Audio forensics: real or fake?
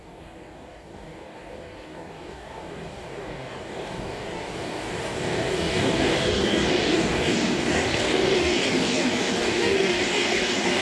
fake